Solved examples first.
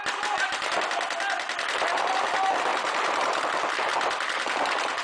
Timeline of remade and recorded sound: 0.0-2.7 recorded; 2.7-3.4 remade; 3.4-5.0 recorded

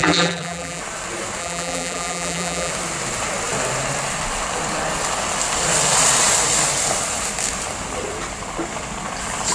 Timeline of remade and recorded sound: 0.0-0.8 remade; 0.8-1.4 recorded; 1.4-2.7 remade; 2.7-9.5 recorded

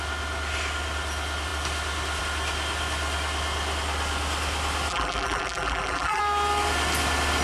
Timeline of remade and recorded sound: 0.0-4.9 recorded; 4.9-6.2 remade; 6.2-7.4 recorded

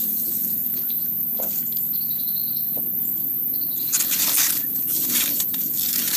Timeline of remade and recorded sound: 0.0-2.4 remade; 2.4-4.7 recorded; 4.7-6.2 remade

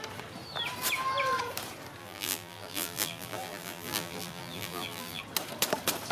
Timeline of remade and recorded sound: 0.0-2.0 recorded; 2.0-5.2 remade; 5.2-6.1 recorded

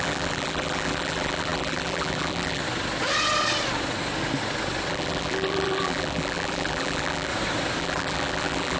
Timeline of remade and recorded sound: 0.0-2.6 remade; 2.6-4.9 recorded; 4.9-7.3 remade; 7.3-7.8 recorded; 7.8-8.8 remade

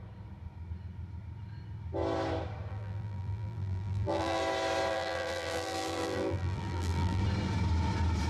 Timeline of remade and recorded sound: 0.0-2.7 recorded; 2.7-4.4 remade; 4.4-4.9 recorded; 4.9-7.2 remade; 7.2-8.3 recorded